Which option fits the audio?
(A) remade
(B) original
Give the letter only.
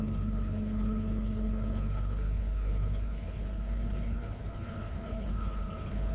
A